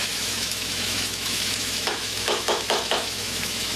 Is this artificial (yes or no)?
yes